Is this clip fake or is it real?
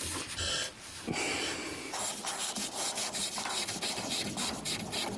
real